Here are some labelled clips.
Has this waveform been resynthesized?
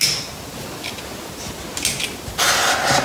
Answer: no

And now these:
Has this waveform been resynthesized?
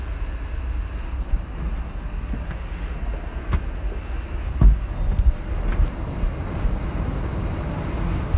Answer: no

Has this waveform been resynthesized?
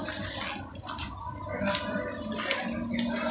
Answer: no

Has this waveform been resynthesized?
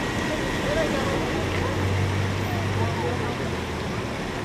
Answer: no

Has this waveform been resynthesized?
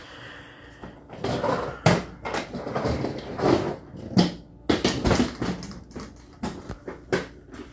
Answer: no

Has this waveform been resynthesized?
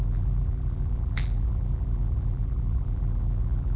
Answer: yes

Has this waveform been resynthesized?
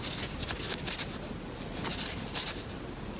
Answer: no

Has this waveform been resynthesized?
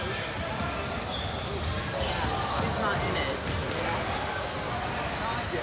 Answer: no